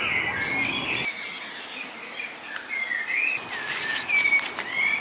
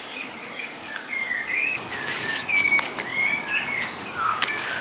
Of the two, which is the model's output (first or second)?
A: second